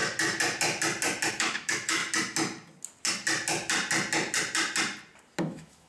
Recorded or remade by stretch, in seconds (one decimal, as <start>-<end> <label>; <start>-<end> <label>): 0.0-1.3 recorded; 1.3-2.0 remade; 2.0-5.4 recorded; 5.4-5.9 remade